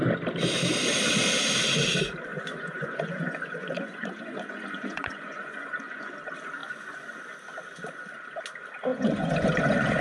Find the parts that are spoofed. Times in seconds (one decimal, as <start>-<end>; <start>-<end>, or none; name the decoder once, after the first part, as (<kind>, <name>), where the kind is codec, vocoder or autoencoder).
2.3-6.1 (vocoder, Vocos); 6.6-7.2; 8.9-10.0